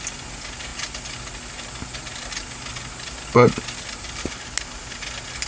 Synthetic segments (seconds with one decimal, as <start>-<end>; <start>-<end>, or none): none